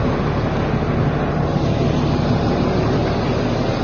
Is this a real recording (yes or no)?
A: yes